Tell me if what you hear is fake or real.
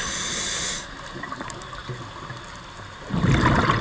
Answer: real